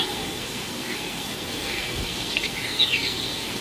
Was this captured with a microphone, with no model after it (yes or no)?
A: no